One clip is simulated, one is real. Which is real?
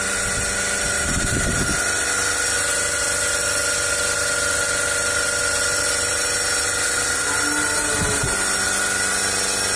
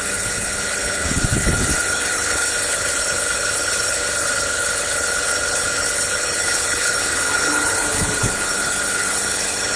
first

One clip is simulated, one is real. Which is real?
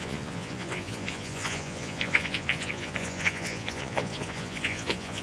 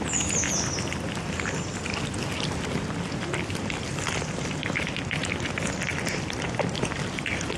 second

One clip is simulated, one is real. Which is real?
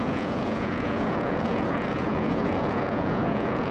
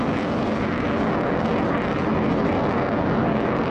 second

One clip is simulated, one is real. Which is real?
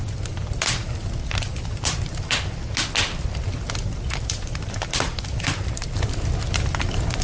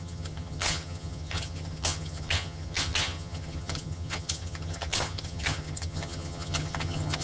first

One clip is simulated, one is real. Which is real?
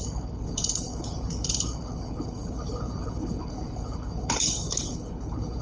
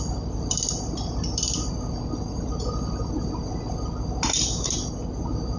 second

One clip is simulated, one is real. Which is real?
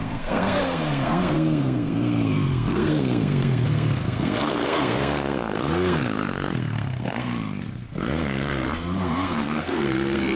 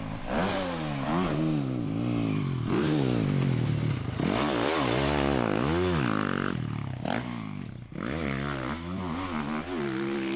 second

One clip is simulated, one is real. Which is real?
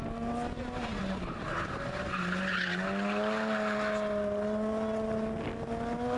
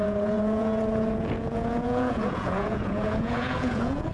first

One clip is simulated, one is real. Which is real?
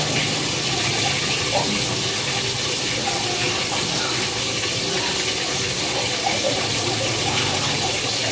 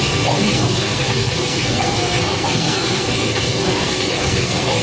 first